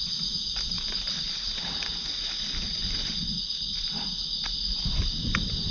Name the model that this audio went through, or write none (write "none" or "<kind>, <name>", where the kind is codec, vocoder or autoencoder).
none